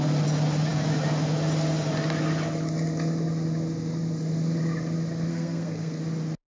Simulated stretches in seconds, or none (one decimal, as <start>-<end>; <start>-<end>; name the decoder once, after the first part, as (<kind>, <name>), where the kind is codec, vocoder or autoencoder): 5.3-6.0 (codec, SNAC)